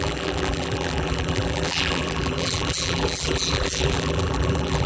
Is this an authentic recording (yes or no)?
no